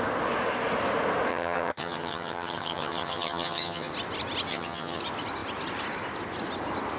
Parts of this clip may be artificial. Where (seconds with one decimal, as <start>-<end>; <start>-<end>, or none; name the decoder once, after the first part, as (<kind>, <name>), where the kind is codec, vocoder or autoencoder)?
1.3-3.9 (vocoder, HiFi-GAN); 4.5-5.0